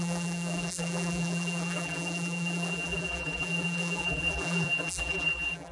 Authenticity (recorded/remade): remade